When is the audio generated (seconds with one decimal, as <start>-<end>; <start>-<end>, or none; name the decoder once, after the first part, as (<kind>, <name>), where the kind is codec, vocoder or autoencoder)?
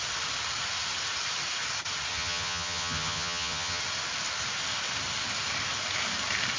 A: 2.1-3.8 (vocoder, HiFi-GAN)